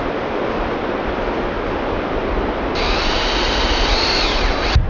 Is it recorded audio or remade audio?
recorded